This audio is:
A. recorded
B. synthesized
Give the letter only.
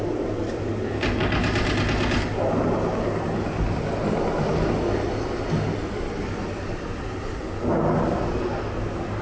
A